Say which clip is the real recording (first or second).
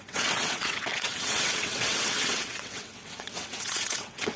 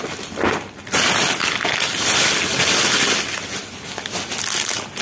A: second